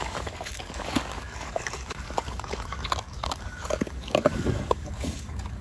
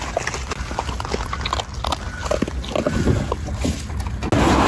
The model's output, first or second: first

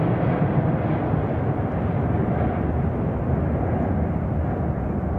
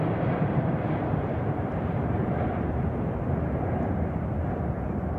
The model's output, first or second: second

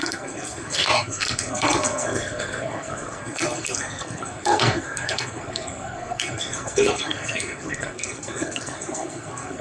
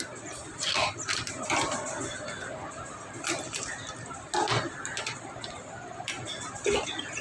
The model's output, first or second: first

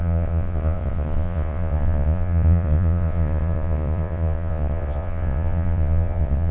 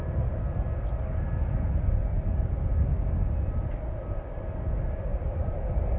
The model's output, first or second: first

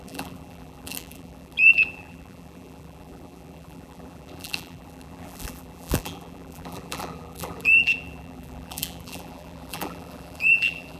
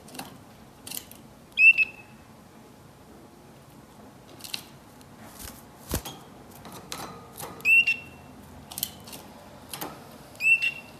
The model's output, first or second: first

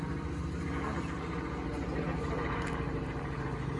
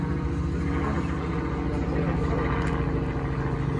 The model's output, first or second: first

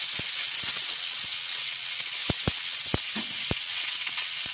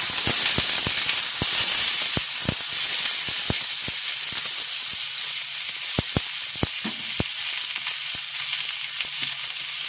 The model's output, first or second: first